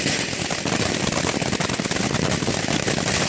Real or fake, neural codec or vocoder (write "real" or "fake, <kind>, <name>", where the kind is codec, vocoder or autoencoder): real